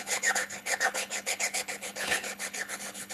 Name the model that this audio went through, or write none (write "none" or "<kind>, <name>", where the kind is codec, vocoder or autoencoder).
codec, HILCodec